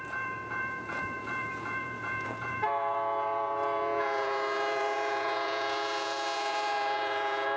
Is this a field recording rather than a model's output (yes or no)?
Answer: no